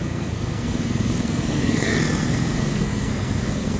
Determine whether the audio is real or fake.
fake